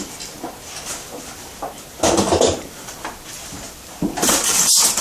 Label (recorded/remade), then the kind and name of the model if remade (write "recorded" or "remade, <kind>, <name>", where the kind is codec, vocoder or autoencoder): recorded